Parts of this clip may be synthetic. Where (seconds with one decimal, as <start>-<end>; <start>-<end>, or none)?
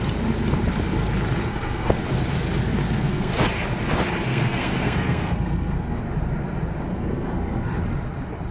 1.4-2.0; 2.8-3.3; 4.3-6.0; 6.9-7.8